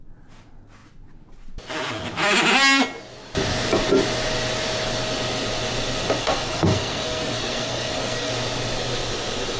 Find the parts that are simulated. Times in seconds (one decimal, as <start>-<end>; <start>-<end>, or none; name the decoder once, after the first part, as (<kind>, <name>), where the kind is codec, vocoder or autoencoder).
6.2-8.3 (codec, SNAC)